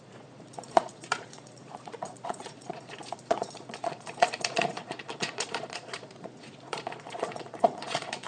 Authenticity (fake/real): fake